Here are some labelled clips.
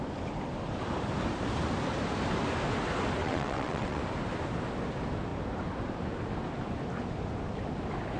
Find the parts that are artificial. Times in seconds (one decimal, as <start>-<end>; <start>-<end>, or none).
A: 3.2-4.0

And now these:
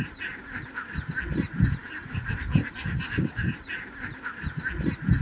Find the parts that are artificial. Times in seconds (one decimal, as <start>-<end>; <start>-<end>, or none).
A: none

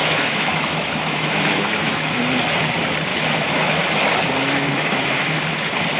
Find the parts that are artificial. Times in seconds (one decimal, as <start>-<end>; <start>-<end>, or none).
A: 0.0-2.2; 3.1-3.8; 4.7-5.4

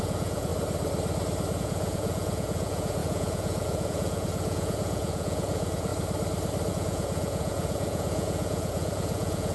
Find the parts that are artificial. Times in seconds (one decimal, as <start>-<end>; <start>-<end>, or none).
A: 0.0-0.5; 1.6-5.9; 6.7-9.5

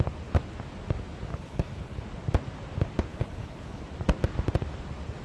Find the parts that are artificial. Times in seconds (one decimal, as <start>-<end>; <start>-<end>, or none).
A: 1.3-2.0; 3.1-3.8

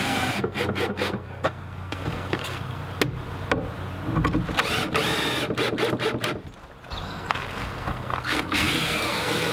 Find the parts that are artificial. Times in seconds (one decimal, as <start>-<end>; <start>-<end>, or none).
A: 0.0-2.8; 7.0-9.5